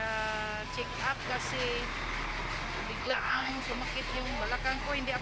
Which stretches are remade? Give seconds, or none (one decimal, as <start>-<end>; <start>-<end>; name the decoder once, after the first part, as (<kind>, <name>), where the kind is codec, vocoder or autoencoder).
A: 3.0-3.5 (codec, ZipCodec)